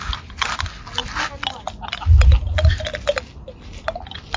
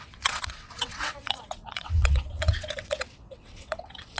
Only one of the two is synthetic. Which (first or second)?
second